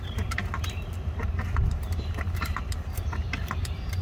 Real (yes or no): no